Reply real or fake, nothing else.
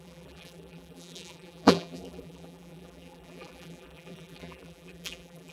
fake